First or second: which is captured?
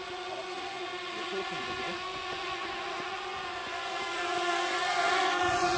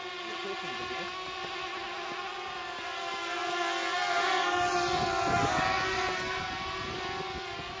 second